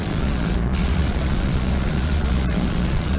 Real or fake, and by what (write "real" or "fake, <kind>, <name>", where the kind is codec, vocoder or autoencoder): fake, vocoder, Vocos